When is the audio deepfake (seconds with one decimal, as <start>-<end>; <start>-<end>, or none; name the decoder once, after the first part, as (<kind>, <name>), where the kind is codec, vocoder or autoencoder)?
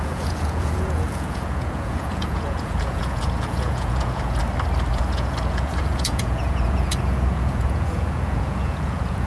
0.0-4.4 (vocoder, Vocos); 4.9-9.3